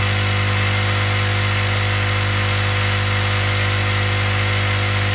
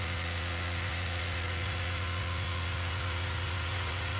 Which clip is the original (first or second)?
first